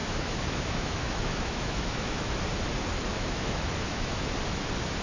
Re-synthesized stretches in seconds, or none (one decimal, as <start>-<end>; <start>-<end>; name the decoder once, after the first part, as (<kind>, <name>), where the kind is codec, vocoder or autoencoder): 0.0-2.3 (autoencoder, DAC-VAE); 3.1-4.3

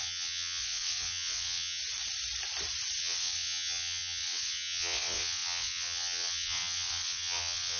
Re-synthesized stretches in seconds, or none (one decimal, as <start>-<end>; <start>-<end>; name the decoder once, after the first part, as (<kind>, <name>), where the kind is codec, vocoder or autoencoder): 0.0-1.8 (vocoder, WaveNeXt); 3.0-7.8

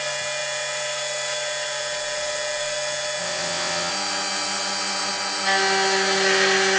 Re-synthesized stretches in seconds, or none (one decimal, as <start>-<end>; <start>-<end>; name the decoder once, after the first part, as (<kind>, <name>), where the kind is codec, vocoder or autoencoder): 3.2-3.9 (vocoder, WaveNeXt)

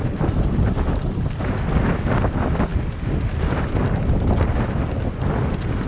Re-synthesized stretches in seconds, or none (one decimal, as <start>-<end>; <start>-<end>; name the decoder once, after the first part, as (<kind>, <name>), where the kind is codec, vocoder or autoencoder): none

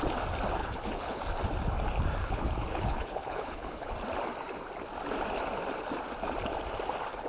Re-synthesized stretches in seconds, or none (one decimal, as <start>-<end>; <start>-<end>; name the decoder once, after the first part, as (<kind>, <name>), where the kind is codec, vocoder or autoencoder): 0.6-1.2 (codec, HILCodec); 2.2-3.9

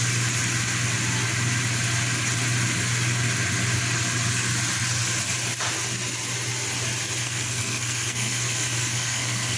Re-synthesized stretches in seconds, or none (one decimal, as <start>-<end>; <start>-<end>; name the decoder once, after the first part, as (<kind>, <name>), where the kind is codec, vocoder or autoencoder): 7.2-9.6 (codec, SNAC)